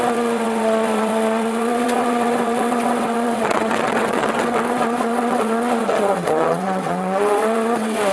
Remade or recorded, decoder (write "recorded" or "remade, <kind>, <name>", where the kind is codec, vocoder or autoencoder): remade, vocoder, WaveNeXt